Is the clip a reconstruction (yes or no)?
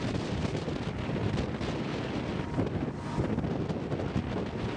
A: no